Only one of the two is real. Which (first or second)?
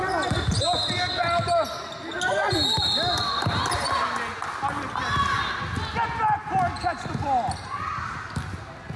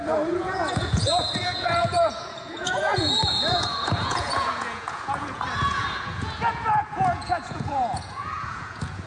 first